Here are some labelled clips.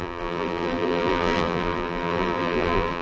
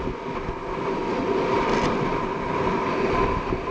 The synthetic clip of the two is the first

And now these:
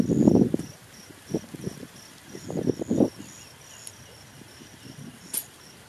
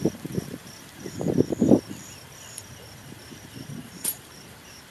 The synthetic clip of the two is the second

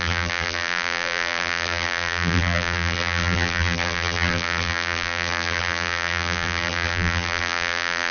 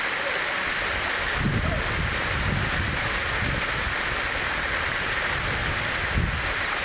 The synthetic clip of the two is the first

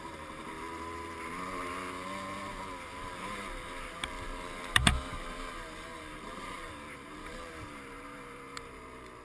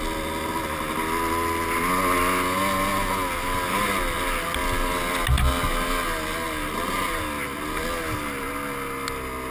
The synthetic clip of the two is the first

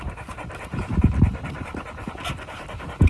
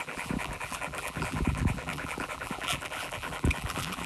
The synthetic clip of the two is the second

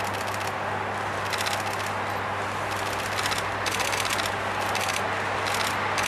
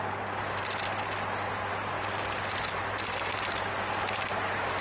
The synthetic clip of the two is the second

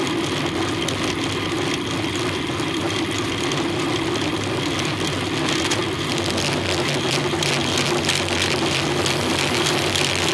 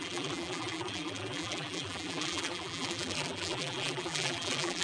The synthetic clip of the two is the second